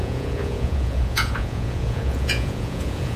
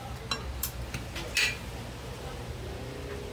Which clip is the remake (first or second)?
first